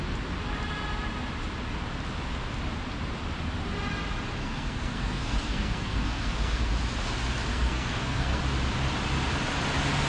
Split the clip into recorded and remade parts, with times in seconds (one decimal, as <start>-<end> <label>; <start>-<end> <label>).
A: 0.0-4.4 recorded; 4.4-6.7 remade; 6.7-7.5 recorded; 7.5-8.4 remade; 8.4-10.1 recorded